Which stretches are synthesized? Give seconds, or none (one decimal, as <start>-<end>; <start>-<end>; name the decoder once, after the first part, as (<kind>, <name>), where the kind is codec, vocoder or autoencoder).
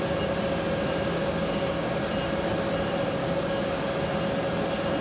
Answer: 1.2-1.9 (codec, DAC); 3.2-3.8